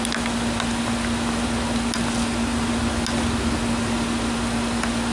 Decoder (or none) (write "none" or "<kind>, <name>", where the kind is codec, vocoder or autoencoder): none